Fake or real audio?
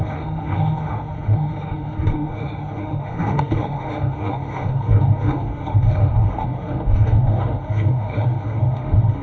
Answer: fake